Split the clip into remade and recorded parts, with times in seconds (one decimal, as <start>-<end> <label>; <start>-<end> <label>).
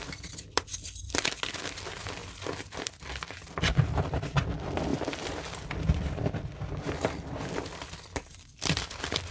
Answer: 0.0-0.7 remade; 0.7-1.6 recorded; 1.6-9.3 remade